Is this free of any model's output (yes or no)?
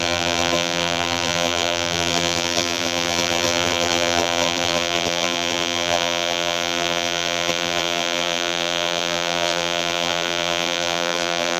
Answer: no